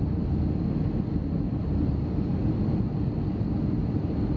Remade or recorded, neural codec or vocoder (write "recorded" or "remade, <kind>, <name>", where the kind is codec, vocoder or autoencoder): recorded